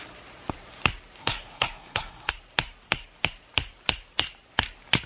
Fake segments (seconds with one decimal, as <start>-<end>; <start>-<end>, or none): 1.2-2.3